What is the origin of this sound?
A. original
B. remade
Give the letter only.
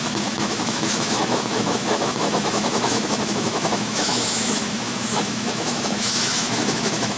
B